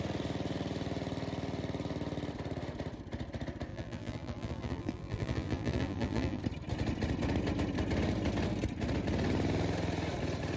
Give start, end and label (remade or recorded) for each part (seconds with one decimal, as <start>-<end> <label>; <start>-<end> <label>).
0.0-3.7 recorded; 3.7-6.4 remade; 6.4-10.6 recorded